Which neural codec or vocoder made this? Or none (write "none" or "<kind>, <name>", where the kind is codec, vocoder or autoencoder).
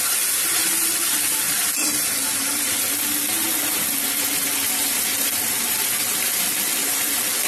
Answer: none